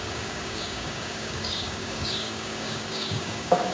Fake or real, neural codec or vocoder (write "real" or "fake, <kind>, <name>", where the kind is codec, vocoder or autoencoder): fake, codec, DAC